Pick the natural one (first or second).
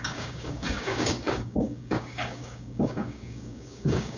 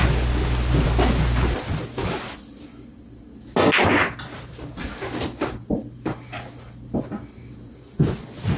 second